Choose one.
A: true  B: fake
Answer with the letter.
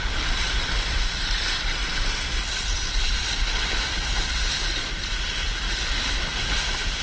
B